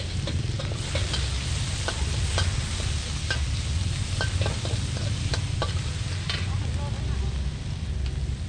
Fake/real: real